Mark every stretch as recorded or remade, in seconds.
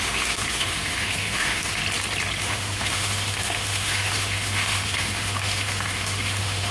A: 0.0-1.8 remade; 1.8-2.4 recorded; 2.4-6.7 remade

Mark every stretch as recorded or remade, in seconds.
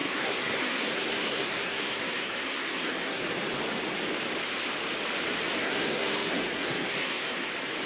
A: 0.0-3.2 remade; 3.2-5.6 recorded; 5.6-7.5 remade; 7.5-7.9 recorded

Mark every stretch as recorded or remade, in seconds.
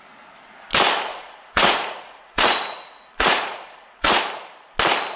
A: 0.0-1.1 recorded; 1.1-4.2 remade; 4.2-5.2 recorded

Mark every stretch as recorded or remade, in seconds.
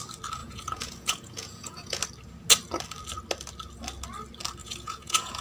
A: 0.0-0.4 recorded; 0.4-2.0 remade; 2.0-4.6 recorded; 4.6-5.4 remade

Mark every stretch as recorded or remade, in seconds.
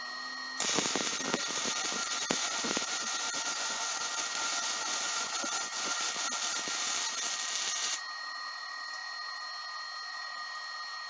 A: 0.0-2.0 recorded; 2.0-6.0 remade; 6.0-11.1 recorded